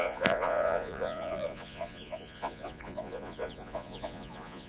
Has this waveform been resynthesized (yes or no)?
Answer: yes